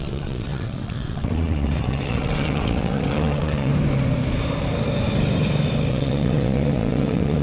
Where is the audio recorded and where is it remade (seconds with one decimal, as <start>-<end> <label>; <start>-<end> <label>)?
0.0-3.7 remade; 3.7-5.9 recorded; 5.9-7.4 remade